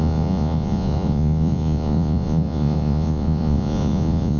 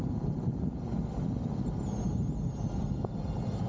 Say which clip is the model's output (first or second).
first